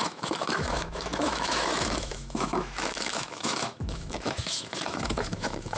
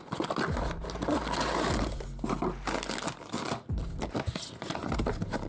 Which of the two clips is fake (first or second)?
first